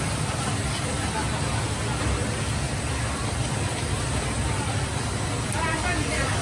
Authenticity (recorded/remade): recorded